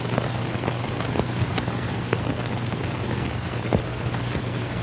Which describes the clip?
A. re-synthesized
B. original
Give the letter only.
A